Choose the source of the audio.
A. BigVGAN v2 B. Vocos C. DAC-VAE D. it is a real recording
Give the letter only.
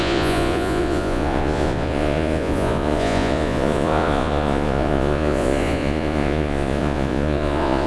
B